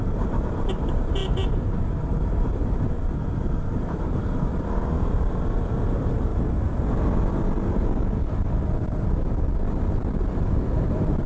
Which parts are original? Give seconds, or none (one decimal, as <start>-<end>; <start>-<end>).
4.5-5.1; 6.3-10.9